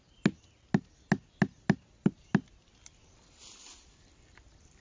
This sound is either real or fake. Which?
real